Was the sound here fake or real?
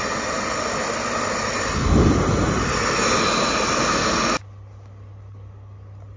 real